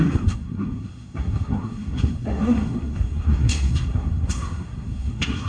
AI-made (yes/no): yes